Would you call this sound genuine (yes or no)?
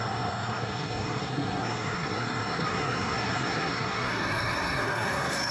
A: no